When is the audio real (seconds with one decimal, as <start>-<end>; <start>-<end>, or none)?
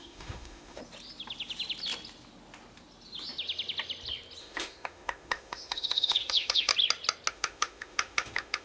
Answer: 0.8-4.4; 6.7-7.3